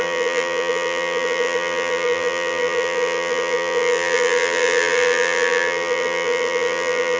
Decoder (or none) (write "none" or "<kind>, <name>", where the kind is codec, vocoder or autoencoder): vocoder, BigVGAN v2